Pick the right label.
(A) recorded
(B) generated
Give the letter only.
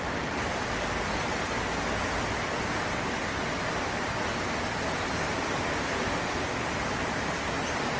A